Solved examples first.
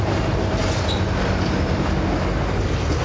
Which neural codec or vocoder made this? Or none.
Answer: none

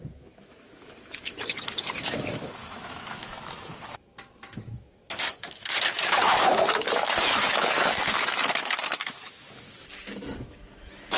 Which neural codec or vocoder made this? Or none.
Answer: autoencoder, DAC-VAE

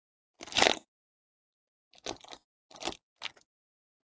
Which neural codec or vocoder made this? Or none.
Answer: none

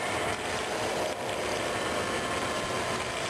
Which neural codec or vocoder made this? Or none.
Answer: none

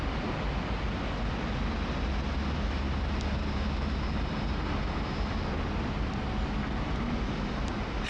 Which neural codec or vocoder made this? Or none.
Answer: none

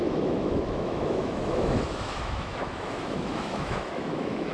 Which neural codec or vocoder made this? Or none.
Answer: autoencoder, DAC-VAE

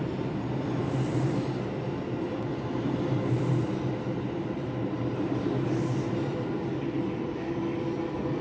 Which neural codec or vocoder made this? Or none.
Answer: none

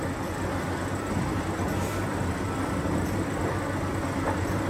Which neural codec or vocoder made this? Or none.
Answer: none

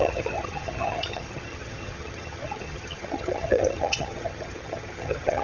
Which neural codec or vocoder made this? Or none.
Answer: vocoder, HiFi-GAN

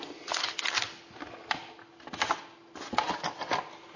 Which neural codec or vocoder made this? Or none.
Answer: none